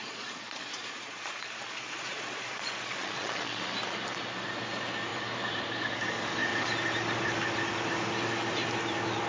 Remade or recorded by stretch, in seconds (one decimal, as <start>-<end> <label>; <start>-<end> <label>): 0.0-3.6 remade; 3.6-9.3 recorded